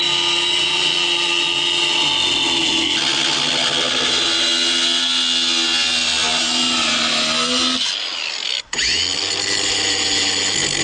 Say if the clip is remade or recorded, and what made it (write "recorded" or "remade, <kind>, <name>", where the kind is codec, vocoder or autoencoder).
recorded